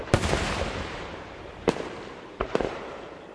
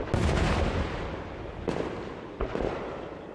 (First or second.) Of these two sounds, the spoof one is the first